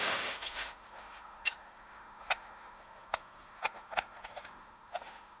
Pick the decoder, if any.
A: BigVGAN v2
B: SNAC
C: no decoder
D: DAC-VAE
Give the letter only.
D